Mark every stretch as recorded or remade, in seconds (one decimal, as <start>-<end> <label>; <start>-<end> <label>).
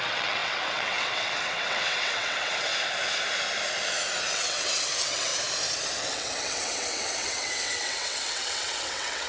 0.0-2.7 remade; 2.7-4.3 recorded; 4.3-5.3 remade; 5.3-6.0 recorded; 6.0-9.3 remade